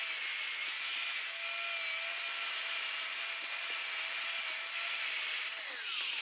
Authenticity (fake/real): real